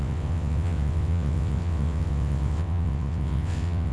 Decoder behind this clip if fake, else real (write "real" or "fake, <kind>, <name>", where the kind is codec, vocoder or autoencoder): fake, vocoder, WaveNeXt